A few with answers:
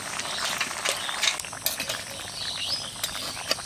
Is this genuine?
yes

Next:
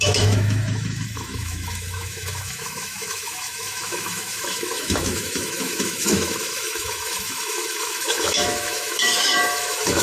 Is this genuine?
no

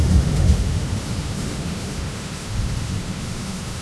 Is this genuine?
no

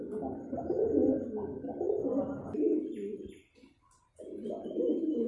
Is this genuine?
yes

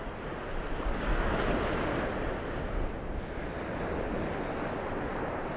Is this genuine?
yes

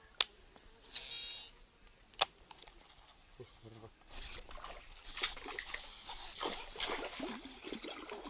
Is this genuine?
yes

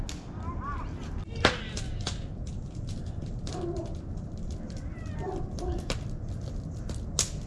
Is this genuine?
yes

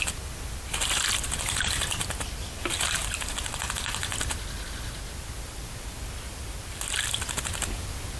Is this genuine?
yes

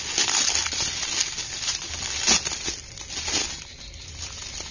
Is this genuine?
yes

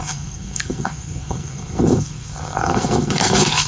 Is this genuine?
no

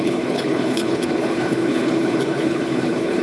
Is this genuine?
no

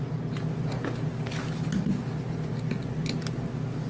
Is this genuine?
yes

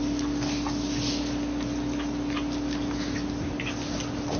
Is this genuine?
yes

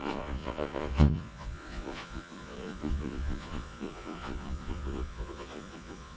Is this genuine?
no